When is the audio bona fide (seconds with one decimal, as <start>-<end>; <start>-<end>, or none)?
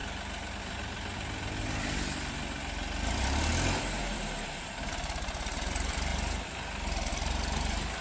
0.0-0.6; 3.5-4.0; 6.1-7.1